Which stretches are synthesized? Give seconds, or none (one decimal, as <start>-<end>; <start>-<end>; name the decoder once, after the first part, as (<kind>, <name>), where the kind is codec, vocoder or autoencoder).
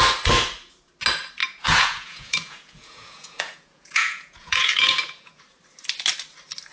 1.4-5.4 (vocoder, Vocos)